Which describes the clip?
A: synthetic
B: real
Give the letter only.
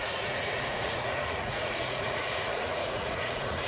A